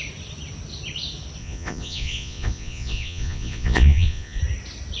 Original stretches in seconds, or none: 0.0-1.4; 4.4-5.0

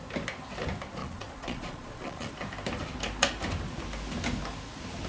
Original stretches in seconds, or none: 0.0-1.0; 2.3-5.1

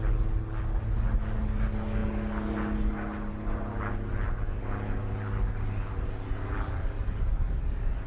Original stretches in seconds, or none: 0.0-8.1

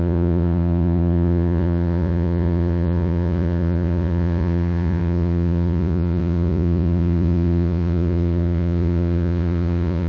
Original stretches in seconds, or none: none

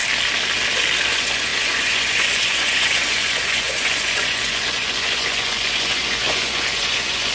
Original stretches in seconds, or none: 0.0-1.1